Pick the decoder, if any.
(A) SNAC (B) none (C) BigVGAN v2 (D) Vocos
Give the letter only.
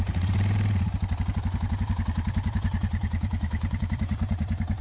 C